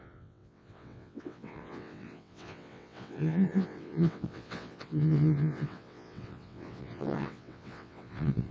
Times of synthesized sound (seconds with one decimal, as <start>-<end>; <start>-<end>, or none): 0.0-8.5